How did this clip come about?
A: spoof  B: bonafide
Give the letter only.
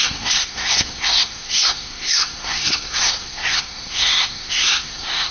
A